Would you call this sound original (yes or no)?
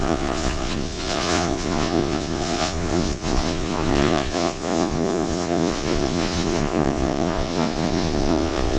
no